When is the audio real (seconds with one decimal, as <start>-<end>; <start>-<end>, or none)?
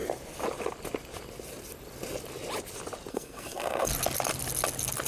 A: 0.0-3.1; 3.9-5.1